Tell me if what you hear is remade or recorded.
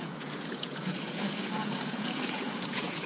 remade